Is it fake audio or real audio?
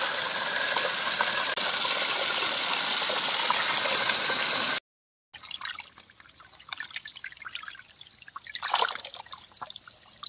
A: real